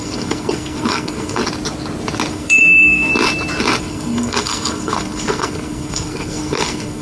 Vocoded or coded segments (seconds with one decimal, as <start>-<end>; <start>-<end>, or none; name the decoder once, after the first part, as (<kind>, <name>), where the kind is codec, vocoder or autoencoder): 0.0-1.4 (codec, SNAC); 2.3-3.1; 3.8-7.0